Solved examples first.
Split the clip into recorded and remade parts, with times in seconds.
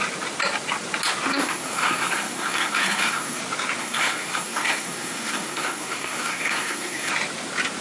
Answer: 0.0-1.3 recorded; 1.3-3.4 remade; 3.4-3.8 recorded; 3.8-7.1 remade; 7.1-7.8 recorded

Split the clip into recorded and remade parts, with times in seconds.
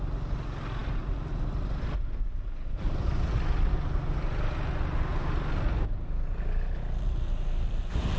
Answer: 0.0-8.2 recorded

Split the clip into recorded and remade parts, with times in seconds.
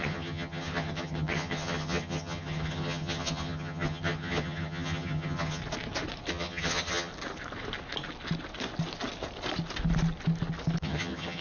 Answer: 0.0-5.6 remade; 5.6-6.3 recorded; 6.3-7.1 remade; 7.1-10.8 recorded; 10.8-11.4 remade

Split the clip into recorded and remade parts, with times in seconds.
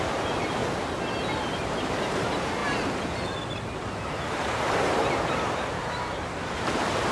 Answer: 0.0-0.6 remade; 0.6-1.9 recorded; 1.9-2.6 remade; 2.6-4.0 recorded; 4.0-7.1 remade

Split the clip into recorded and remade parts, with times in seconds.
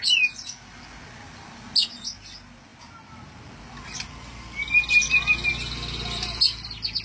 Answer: 0.0-7.0 recorded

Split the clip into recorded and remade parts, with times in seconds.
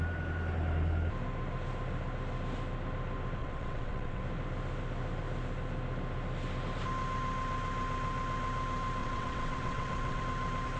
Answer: 0.0-3.4 recorded; 3.4-4.2 remade; 4.2-9.0 recorded; 9.0-10.2 remade; 10.2-10.8 recorded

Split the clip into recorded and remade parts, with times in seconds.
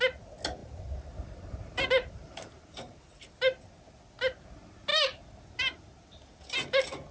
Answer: 0.0-0.6 recorded; 0.6-3.3 remade; 3.3-7.1 recorded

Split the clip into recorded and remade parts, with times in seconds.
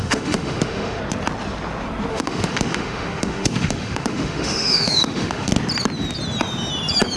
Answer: 0.0-1.0 remade; 1.0-2.1 recorded; 2.1-5.5 remade; 5.5-7.2 recorded